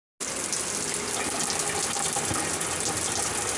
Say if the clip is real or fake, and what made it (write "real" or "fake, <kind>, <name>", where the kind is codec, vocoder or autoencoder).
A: real